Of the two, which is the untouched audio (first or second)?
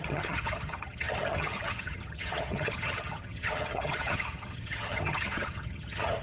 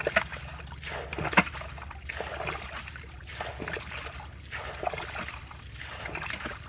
second